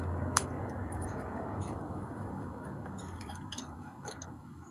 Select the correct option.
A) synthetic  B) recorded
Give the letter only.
A